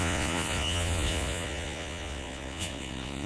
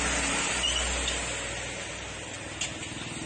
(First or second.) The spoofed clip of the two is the first